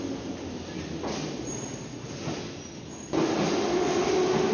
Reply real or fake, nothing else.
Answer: real